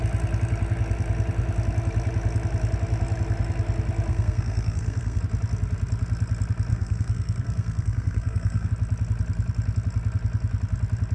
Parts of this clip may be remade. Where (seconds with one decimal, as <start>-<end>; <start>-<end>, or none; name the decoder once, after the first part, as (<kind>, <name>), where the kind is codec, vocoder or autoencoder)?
4.1-5.2 (codec, SNAC); 6.7-8.7